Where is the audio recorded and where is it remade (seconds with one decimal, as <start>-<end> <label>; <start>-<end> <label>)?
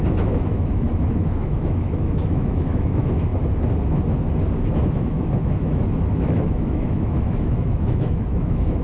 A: 0.0-3.3 remade; 3.3-4.7 recorded; 4.7-8.8 remade